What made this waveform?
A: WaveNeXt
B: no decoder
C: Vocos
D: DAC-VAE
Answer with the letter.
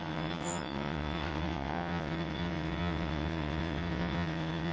A